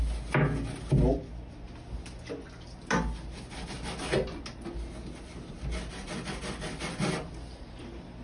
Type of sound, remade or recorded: recorded